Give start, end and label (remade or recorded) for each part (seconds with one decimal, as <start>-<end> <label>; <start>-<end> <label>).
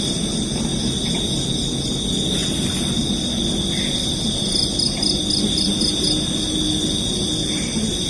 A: 0.0-8.1 recorded